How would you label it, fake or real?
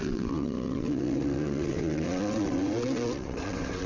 fake